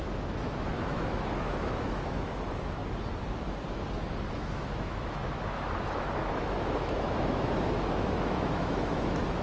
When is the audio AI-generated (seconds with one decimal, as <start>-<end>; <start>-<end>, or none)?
0.0-2.8; 4.3-9.4